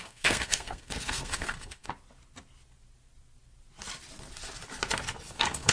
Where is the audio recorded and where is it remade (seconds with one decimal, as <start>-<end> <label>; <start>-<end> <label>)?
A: 0.0-1.9 remade; 1.9-5.3 recorded; 5.3-5.7 remade